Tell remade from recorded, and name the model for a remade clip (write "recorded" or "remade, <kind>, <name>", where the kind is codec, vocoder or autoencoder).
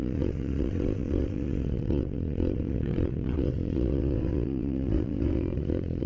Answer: remade, vocoder, WaveNeXt